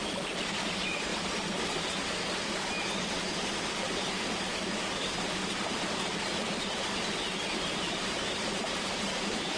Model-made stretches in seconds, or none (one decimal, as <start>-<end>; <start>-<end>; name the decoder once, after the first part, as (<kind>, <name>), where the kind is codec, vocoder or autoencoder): 0.0-1.1 (vocoder, BigVGAN v2); 3.1-9.6

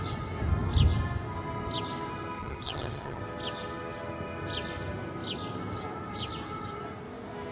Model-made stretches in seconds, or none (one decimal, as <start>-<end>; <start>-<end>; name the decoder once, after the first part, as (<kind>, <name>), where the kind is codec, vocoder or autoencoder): 2.4-3.2 (vocoder, HiFi-GAN)

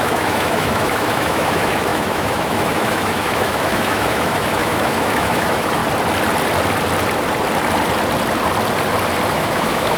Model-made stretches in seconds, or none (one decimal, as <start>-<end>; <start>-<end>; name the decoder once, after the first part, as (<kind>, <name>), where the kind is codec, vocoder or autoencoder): 0.0-5.8 (autoencoder, DAC-VAE); 9.3-10.0